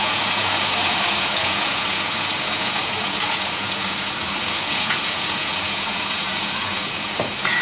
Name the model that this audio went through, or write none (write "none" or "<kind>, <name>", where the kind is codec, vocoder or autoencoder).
vocoder, Vocos